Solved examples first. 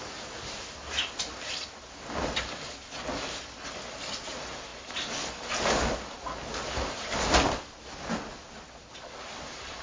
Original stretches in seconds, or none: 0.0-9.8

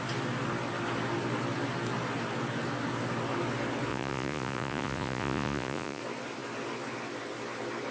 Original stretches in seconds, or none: 0.0-3.9; 6.0-7.9